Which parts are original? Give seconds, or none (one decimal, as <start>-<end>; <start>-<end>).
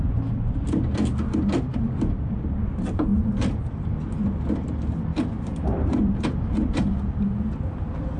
0.0-1.7; 2.5-5.1; 6.9-8.2